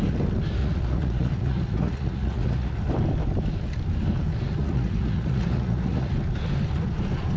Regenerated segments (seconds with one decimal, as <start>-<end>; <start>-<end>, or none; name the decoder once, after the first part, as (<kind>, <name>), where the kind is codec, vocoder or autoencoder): 0.6-2.8 (vocoder, Vocos); 4.6-6.1